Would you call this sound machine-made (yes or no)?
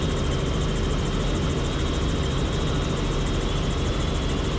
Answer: no